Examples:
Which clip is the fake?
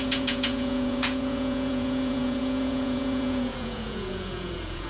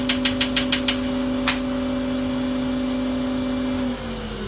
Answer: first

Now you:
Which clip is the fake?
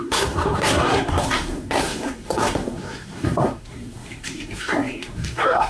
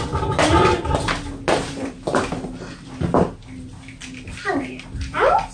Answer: first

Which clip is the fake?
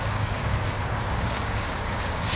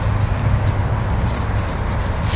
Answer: first